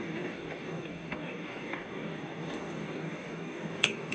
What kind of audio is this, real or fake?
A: fake